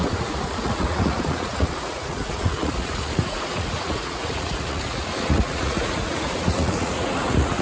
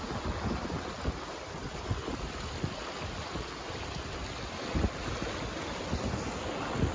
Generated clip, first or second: first